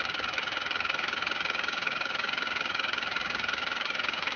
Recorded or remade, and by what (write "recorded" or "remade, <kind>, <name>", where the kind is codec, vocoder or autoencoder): remade, codec, DAC